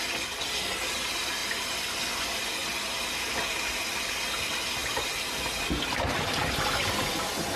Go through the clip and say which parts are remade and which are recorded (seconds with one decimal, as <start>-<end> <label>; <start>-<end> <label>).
0.0-7.6 recorded